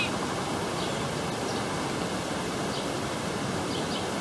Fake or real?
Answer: real